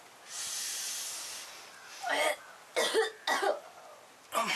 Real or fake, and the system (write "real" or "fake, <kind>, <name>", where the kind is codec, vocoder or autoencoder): real